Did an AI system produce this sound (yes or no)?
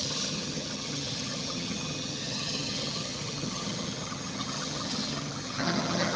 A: yes